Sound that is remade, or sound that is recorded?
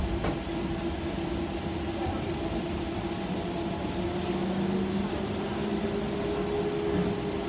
recorded